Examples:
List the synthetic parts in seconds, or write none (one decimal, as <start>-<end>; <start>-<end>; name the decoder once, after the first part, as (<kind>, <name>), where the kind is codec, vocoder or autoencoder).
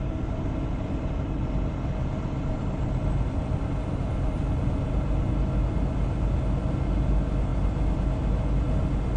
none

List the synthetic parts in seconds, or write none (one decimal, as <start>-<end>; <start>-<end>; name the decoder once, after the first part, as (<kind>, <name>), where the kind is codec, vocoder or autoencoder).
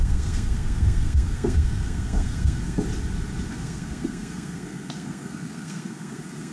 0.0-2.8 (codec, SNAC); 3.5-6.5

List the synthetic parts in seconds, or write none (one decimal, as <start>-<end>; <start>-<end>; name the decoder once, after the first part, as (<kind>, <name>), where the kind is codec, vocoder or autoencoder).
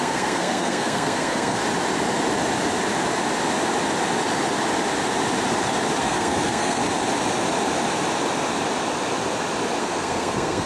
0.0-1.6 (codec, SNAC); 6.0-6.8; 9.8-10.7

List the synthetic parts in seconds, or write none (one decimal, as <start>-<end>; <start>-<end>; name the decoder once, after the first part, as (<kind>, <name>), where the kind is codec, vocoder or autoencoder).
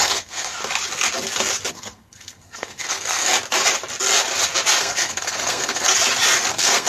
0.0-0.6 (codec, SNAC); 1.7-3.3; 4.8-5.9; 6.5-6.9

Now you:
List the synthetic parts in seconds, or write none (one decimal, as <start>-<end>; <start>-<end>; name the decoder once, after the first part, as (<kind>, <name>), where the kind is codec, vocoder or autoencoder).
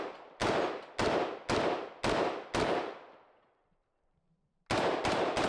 none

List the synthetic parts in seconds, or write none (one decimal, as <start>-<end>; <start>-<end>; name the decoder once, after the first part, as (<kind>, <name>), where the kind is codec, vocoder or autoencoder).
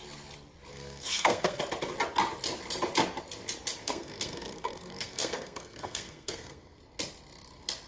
0.7-1.6 (codec, SNAC); 3.8-6.8